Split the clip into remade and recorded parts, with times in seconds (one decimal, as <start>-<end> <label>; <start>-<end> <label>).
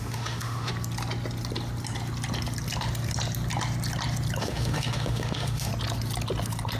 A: 0.0-0.7 remade; 0.7-4.4 recorded; 4.4-5.7 remade; 5.7-6.8 recorded